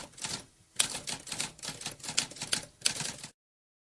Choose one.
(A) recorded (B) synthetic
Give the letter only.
A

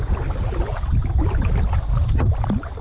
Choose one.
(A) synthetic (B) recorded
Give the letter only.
B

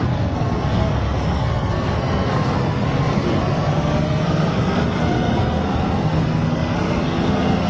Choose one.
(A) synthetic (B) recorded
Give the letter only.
A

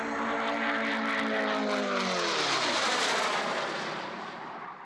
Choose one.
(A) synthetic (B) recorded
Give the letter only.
B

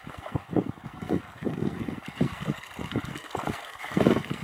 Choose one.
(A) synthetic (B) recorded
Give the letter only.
A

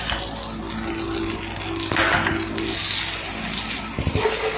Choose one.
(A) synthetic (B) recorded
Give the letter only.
B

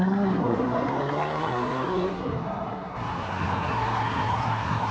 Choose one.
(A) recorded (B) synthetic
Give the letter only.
B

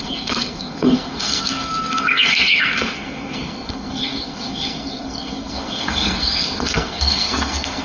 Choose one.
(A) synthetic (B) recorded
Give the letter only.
A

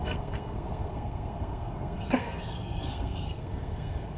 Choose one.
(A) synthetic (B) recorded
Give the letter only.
A